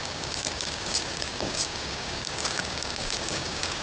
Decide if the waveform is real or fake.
fake